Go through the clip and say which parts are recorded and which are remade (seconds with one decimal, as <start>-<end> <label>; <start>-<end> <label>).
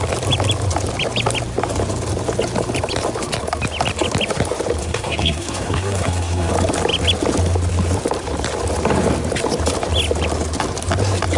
0.0-4.8 recorded; 4.8-6.5 remade; 6.5-11.4 recorded